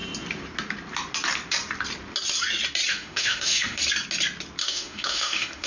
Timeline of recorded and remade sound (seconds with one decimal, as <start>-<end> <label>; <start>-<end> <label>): 0.0-2.9 recorded; 2.9-3.8 remade; 3.8-4.6 recorded; 4.6-5.7 remade